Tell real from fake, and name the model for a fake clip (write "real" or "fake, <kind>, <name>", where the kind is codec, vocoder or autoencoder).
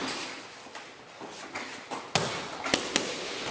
real